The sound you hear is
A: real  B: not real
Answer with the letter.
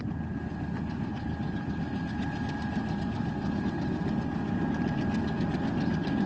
B